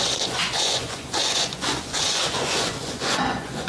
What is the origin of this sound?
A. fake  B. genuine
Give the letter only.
A